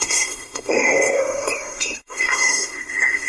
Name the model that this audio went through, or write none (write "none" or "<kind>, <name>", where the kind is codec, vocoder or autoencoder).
codec, SNAC